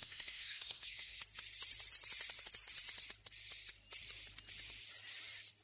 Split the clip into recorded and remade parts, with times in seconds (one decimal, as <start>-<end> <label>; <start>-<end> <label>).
0.0-1.2 remade; 1.2-5.6 recorded

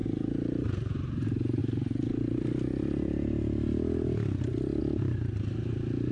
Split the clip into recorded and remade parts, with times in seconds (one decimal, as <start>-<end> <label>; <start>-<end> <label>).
0.0-1.6 remade; 1.6-4.8 recorded; 4.8-6.1 remade

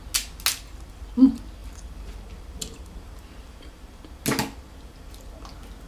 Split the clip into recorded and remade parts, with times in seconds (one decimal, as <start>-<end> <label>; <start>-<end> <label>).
0.0-1.6 recorded; 1.6-3.2 remade; 3.2-5.9 recorded

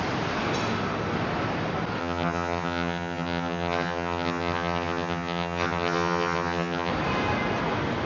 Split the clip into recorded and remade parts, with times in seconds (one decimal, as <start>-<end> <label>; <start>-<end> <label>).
0.0-2.0 recorded; 2.0-6.9 remade; 6.9-8.1 recorded

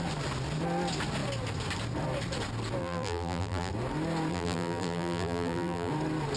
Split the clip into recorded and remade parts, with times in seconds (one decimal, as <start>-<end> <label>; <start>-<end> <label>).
0.0-2.8 recorded; 2.8-3.7 remade; 3.7-4.3 recorded; 4.3-5.9 remade; 5.9-6.4 recorded

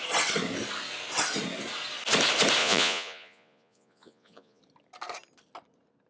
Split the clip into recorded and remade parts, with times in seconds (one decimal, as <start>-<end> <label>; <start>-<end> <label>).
0.0-2.6 recorded; 2.6-4.6 remade; 4.6-6.1 recorded